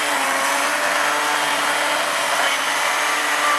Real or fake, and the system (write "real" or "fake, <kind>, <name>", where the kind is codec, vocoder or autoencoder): real